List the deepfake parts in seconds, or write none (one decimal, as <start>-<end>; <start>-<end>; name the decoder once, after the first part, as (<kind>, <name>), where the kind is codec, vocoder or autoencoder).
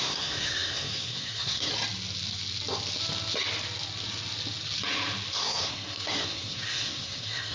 0.0-1.7 (codec, SNAC); 5.3-7.5